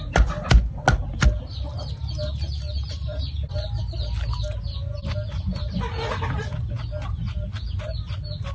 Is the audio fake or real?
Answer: real